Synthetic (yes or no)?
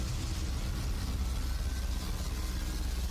no